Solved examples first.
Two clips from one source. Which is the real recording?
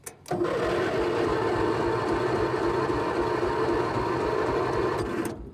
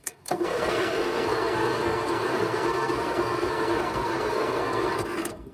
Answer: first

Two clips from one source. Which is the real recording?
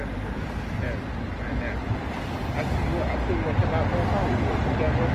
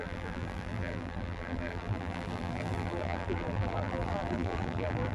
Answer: first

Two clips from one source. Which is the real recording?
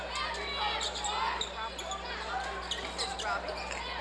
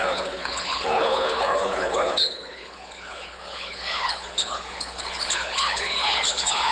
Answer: first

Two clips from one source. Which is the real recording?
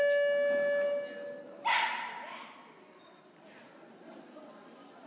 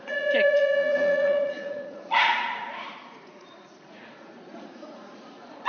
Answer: first